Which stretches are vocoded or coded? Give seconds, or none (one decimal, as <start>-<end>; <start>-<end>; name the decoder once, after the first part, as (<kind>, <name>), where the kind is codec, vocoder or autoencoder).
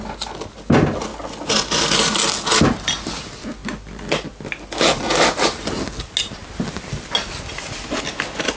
none